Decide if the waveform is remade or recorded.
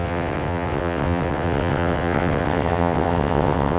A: remade